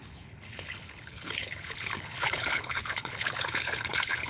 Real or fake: fake